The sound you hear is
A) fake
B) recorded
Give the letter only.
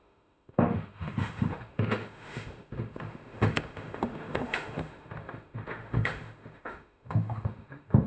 A